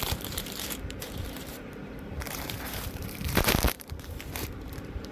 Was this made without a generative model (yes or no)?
no